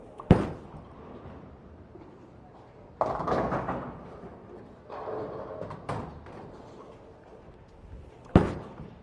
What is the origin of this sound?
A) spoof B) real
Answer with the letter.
B